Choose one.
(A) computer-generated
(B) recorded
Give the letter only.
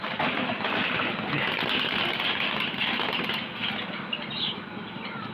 B